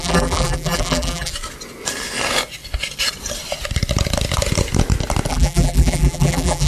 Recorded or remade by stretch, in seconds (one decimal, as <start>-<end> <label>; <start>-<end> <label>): 0.0-1.3 remade; 1.3-5.3 recorded; 5.3-6.7 remade